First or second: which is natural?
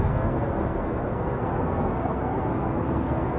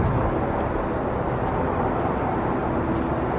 second